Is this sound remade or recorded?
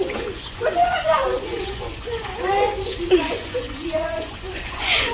remade